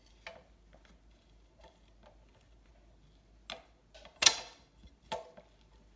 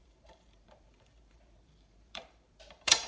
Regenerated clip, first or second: second